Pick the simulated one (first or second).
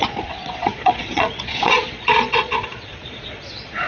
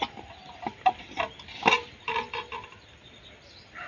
first